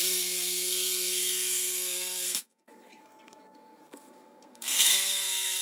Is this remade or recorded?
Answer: remade